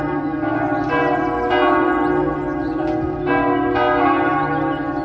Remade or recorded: recorded